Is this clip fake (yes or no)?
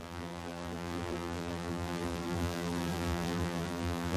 yes